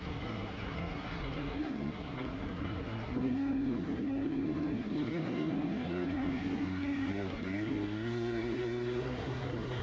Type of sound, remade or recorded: remade